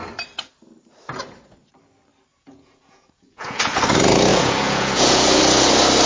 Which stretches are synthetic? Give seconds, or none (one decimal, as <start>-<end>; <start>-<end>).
2.3-3.8; 4.3-5.4